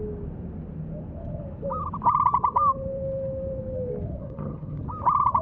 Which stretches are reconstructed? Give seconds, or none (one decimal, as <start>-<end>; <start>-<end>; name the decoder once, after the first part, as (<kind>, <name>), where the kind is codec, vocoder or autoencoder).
4.2-4.8 (vocoder, HiFi-GAN)